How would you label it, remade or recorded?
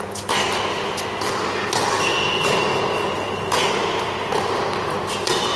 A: recorded